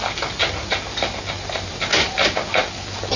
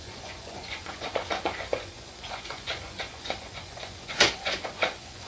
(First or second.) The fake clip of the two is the second